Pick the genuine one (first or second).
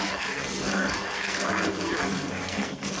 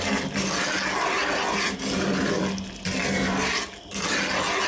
second